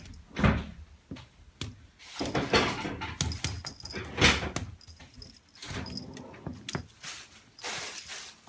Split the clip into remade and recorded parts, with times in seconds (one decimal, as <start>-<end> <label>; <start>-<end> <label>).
0.0-8.5 recorded

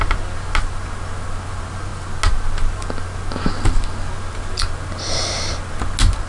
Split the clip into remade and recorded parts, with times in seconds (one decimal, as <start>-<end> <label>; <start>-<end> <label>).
0.0-6.3 recorded

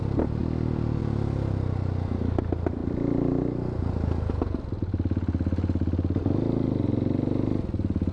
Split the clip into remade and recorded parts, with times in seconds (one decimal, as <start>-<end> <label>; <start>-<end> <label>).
0.0-0.4 recorded; 0.4-1.0 remade; 1.0-8.1 recorded

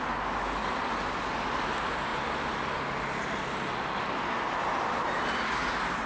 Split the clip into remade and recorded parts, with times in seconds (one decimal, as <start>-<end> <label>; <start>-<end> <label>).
0.0-6.1 recorded